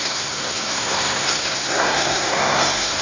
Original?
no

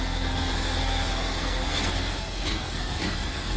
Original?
no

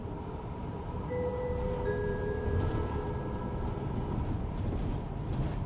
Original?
no